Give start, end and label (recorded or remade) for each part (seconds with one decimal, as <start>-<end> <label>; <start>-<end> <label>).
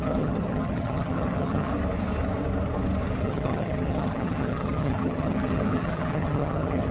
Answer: 0.0-1.7 remade; 1.7-3.2 recorded; 3.2-6.9 remade